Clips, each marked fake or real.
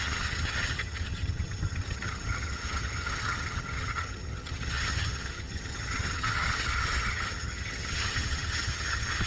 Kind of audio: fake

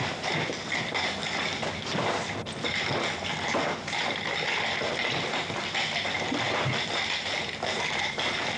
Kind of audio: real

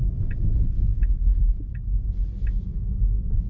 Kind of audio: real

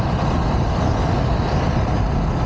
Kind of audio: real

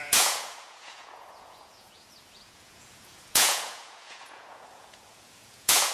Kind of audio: fake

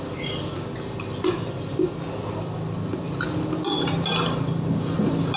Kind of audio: real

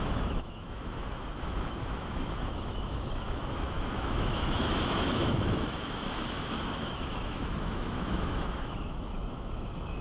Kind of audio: fake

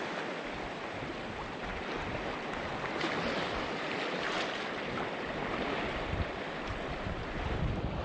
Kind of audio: real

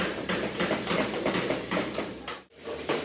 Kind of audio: fake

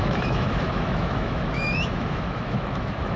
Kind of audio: fake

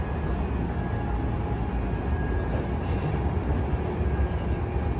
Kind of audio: real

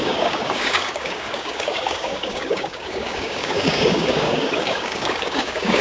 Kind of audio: fake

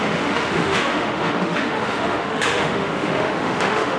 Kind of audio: fake